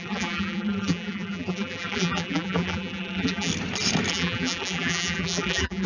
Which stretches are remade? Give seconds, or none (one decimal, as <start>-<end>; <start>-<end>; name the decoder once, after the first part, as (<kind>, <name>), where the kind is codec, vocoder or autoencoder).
0.0-3.5 (vocoder, BigVGAN v2); 4.1-5.9